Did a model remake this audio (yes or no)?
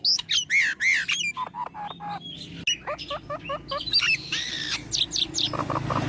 no